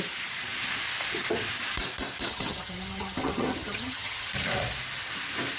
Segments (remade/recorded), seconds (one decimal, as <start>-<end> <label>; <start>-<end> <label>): 0.0-2.3 recorded; 2.3-4.3 remade; 4.3-5.6 recorded